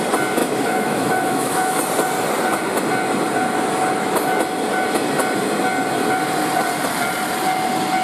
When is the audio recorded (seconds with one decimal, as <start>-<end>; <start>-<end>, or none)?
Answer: 0.0-0.4; 1.8-8.0